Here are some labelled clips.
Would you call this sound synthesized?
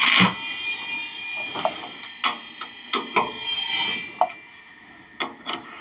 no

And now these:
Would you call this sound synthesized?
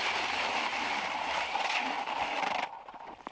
yes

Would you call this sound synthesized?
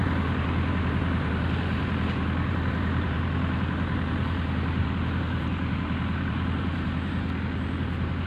yes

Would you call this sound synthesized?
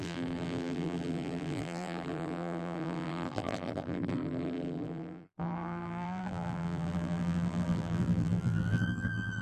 yes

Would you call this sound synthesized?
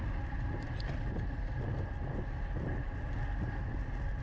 no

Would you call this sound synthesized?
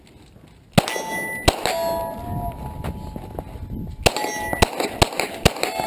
no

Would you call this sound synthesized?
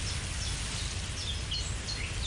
no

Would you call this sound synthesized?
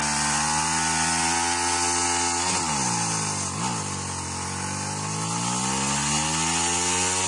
no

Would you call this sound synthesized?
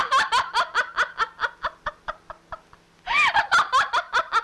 no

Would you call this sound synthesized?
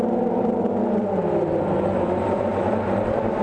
yes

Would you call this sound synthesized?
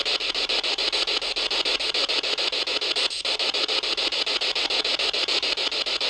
no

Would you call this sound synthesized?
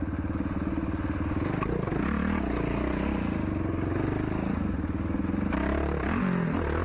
no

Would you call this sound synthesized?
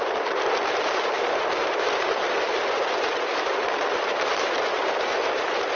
yes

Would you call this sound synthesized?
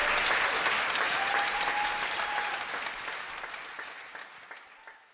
no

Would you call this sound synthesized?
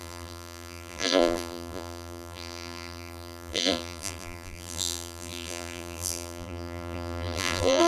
yes